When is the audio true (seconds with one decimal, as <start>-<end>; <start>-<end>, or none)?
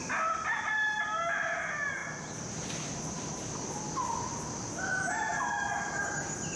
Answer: 0.0-6.6